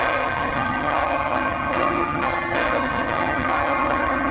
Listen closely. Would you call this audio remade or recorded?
remade